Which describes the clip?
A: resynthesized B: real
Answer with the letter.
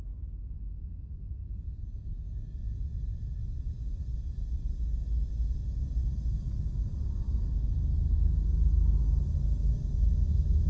B